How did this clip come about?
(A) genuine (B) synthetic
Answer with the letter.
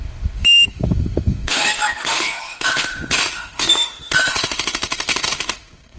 B